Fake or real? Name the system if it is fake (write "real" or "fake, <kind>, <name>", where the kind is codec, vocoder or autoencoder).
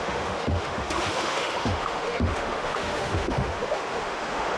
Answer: fake, autoencoder, DAC-VAE